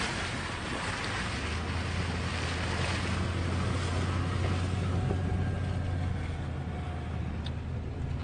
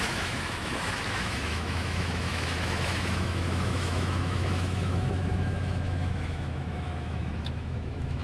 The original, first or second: first